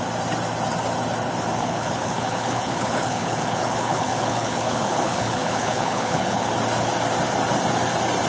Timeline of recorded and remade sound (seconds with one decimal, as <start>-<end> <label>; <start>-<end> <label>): 0.0-1.6 recorded; 1.6-6.5 remade; 6.5-8.3 recorded